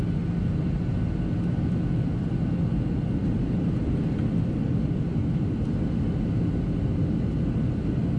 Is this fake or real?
real